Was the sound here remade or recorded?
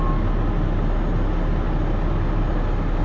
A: recorded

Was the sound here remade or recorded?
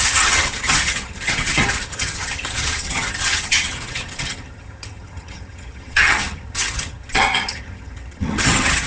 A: remade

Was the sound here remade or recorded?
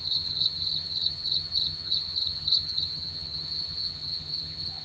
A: remade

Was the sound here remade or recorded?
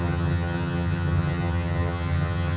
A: remade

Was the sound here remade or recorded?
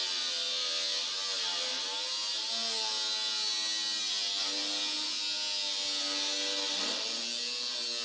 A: recorded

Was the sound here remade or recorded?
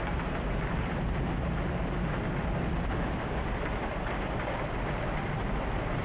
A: recorded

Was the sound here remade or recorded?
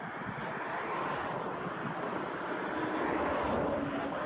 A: recorded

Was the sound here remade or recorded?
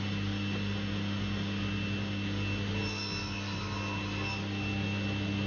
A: recorded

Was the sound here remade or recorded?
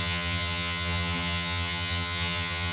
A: remade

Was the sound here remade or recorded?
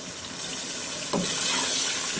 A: recorded